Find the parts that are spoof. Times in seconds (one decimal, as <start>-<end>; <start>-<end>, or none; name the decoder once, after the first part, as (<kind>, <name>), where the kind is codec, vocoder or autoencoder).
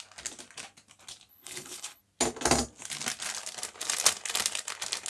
1.3-2.0 (codec, HILCodec)